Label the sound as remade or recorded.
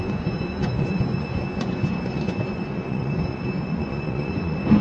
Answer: remade